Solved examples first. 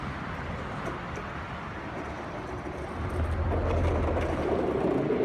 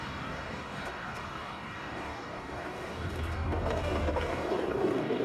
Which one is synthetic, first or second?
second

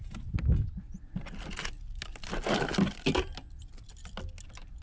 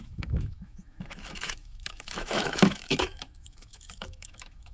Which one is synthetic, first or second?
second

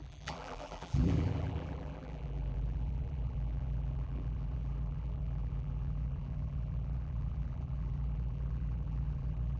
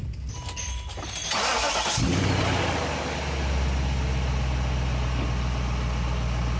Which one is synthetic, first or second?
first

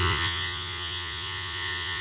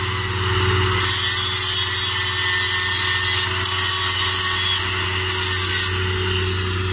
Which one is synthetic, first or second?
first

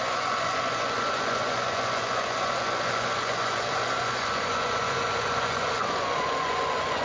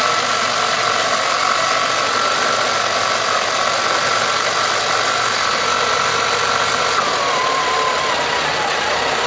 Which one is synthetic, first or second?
first